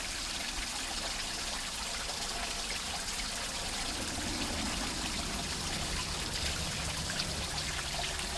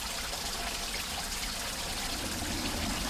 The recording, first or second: second